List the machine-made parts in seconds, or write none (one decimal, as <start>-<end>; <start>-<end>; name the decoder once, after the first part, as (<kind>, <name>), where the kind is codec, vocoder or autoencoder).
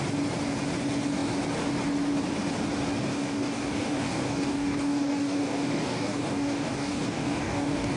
3.1-8.0 (codec, DAC)